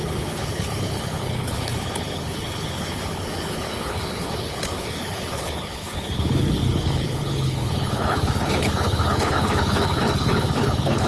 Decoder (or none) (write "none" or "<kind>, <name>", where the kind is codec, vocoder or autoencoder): codec, HILCodec